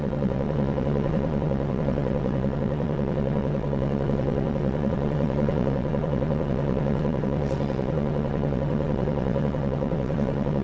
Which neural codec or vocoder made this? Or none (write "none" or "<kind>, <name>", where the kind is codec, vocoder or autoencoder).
vocoder, WaveNeXt